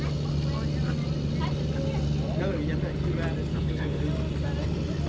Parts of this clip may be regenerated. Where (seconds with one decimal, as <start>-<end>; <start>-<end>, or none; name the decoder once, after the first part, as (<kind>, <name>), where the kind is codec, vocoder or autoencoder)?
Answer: 3.5-4.0 (codec, HILCodec)

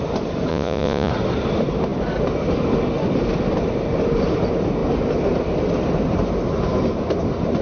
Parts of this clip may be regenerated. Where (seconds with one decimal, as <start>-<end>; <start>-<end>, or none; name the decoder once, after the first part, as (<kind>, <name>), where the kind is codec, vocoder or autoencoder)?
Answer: 0.5-1.1 (vocoder, Vocos)

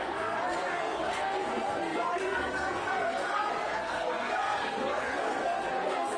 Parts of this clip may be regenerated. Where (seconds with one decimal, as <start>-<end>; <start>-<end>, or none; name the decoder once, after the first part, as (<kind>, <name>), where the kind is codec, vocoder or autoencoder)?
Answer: 0.0-6.2 (codec, SNAC)